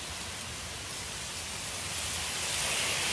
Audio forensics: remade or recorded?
recorded